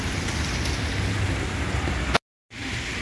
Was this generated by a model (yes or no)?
no